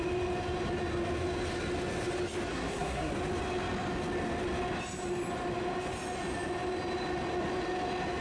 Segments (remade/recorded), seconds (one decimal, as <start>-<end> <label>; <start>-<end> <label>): 0.0-2.5 recorded; 2.5-3.1 remade; 3.1-8.2 recorded